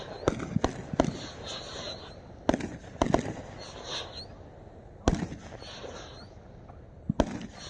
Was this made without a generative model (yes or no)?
yes